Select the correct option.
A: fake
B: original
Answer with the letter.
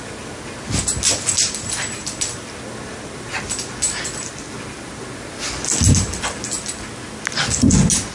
B